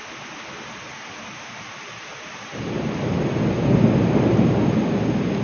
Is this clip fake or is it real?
real